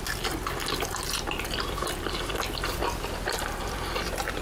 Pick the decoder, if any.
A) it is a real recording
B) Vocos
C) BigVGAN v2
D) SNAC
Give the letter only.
A